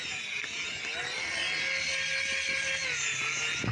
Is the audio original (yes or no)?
yes